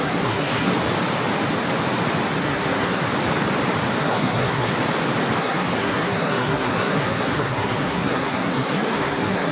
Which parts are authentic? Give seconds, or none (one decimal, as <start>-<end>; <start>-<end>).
0.7-2.4; 3.0-4.0; 4.7-5.4